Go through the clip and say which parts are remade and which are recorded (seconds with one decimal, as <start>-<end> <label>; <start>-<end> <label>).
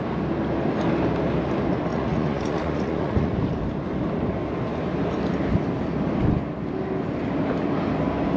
0.0-1.9 recorded; 1.9-3.3 remade; 3.3-8.4 recorded